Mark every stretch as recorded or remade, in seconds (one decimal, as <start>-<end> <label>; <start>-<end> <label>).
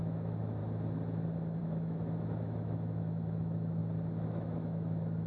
0.0-0.6 remade; 0.6-1.6 recorded; 1.6-3.8 remade; 3.8-4.3 recorded; 4.3-5.3 remade